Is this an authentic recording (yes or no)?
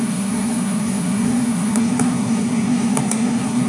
no